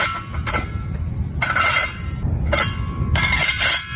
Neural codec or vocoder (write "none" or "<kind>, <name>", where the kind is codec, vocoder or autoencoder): none